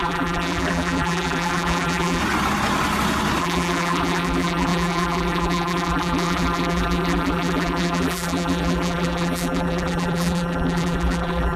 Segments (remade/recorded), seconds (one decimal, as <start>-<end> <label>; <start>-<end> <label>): 0.0-2.2 remade; 2.2-3.4 recorded; 3.4-11.6 remade